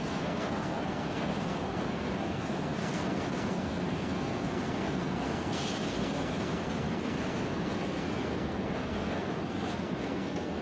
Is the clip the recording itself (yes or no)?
no